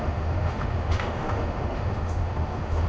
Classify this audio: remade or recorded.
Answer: remade